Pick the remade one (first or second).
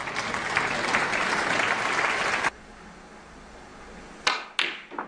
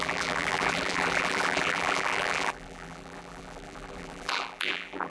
second